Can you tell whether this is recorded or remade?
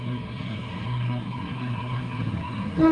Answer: remade